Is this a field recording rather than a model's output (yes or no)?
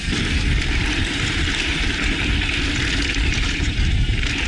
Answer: yes